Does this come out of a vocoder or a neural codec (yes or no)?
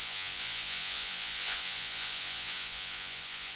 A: yes